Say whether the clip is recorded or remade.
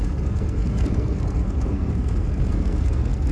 remade